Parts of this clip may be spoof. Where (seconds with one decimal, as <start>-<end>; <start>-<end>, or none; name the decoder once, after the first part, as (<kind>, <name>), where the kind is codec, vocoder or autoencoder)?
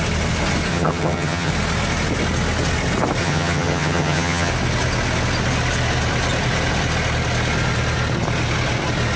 0.7-1.5 (vocoder, HiFi-GAN); 3.2-4.5